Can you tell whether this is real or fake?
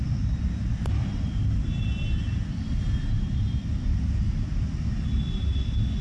real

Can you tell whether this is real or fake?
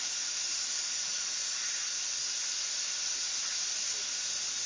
real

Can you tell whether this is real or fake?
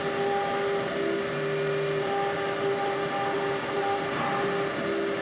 real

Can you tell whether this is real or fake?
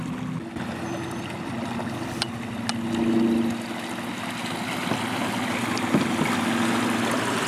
real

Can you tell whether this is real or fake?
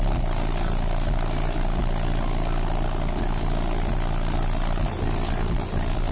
real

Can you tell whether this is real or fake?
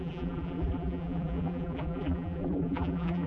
fake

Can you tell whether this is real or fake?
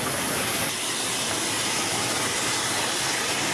real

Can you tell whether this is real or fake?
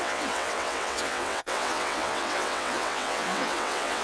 fake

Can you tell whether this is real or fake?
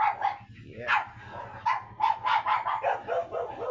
real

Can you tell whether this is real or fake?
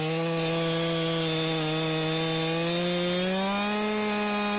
real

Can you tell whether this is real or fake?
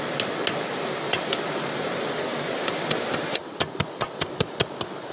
real